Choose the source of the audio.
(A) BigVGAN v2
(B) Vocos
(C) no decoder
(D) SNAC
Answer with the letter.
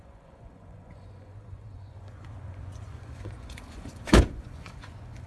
B